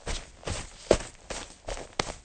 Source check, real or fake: real